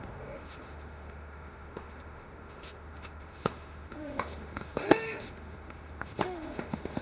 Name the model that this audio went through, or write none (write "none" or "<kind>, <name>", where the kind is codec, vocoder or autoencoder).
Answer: autoencoder, DAC-VAE